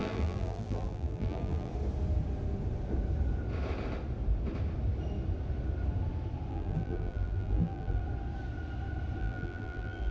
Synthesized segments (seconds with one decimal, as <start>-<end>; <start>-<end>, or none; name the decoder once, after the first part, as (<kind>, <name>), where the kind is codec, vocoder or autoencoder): 0.0-1.7 (vocoder, BigVGAN v2); 6.5-8.0; 9.2-10.1